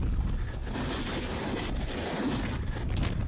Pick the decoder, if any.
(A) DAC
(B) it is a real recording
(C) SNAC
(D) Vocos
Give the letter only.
B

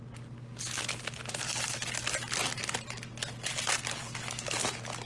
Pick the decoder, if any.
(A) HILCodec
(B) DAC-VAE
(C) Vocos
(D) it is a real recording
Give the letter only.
D